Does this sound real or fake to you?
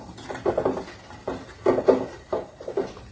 real